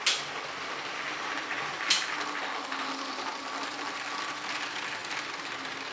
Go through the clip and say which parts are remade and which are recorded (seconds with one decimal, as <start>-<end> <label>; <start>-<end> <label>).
0.0-5.9 recorded